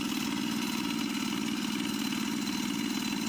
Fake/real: real